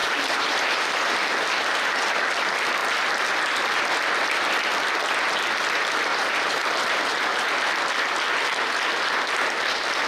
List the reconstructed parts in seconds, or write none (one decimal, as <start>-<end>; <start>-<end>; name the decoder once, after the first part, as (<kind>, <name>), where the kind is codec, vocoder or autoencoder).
0.0-0.6 (vocoder, BigVGAN v2); 6.1-7.6